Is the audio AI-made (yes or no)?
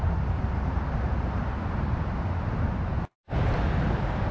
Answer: no